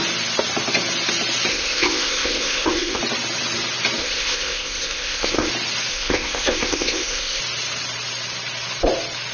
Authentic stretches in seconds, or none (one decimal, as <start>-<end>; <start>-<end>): 0.0-1.5; 3.0-4.0; 5.5-5.9; 7.4-9.3